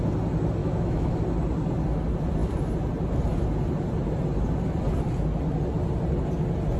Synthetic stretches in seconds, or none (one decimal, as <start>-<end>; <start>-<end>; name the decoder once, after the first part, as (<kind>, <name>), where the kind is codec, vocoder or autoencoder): 0.6-1.2 (autoencoder, DAC-VAE)

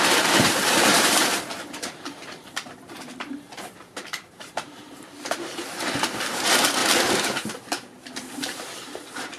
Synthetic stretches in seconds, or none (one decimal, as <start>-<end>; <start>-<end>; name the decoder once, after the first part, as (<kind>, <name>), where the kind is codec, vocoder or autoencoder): 0.0-6.8 (vocoder, BigVGAN v2); 7.5-9.4

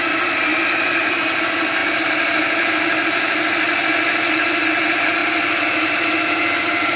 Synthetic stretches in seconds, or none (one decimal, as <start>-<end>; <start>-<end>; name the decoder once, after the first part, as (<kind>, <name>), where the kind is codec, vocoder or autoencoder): 0.5-1.4 (vocoder, BigVGAN v2)

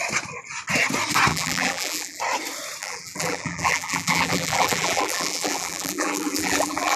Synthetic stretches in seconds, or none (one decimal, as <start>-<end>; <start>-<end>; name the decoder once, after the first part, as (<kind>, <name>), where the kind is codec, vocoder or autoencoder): 1.3-2.2 (vocoder, BigVGAN v2); 2.8-7.0